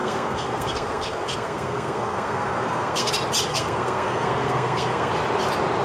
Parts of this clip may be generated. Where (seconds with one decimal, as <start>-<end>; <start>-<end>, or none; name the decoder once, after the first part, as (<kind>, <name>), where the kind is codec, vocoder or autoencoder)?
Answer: 0.0-3.1 (codec, SNAC); 3.5-5.1